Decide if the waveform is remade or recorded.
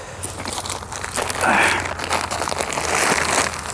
recorded